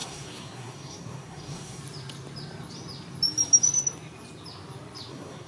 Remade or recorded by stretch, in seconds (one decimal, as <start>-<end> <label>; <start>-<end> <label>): 0.0-1.8 remade; 1.8-5.1 recorded; 5.1-5.5 remade